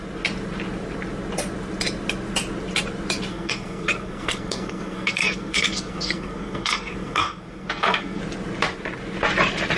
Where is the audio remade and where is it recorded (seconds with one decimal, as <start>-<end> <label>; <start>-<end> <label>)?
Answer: 0.0-3.3 recorded; 3.3-8.2 remade; 8.2-9.8 recorded

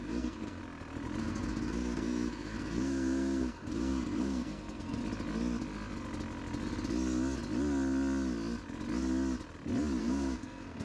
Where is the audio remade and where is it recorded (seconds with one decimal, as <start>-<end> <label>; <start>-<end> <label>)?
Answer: 0.0-0.6 remade; 0.6-1.2 recorded; 1.2-5.0 remade; 5.0-10.0 recorded; 10.0-10.8 remade